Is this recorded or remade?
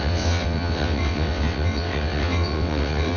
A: remade